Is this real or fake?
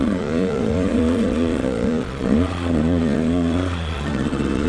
fake